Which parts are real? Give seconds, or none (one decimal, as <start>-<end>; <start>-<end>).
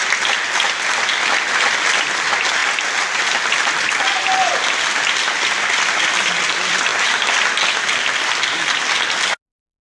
0.0-9.9